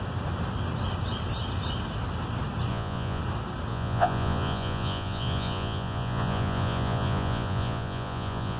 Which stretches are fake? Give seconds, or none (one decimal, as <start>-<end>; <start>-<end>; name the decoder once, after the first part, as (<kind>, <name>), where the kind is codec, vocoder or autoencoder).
2.7-3.2 (vocoder, Vocos); 3.7-8.6